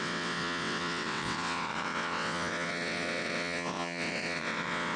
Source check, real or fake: fake